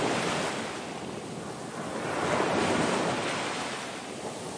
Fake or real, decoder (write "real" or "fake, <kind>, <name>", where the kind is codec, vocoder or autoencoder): real